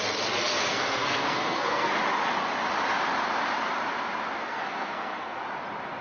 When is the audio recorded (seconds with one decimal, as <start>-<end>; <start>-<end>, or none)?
0.0-0.6; 1.9-4.4; 5.4-6.0